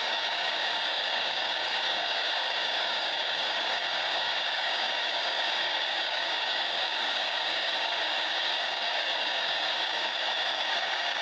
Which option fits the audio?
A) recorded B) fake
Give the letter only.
B